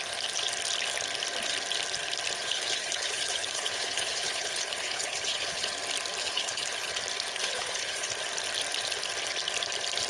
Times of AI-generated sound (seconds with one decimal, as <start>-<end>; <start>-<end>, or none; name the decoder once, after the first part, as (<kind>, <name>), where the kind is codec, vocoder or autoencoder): 2.4-5.7 (codec, HILCodec); 6.2-6.9; 7.4-8.1